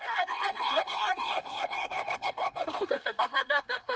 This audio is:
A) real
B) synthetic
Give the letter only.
B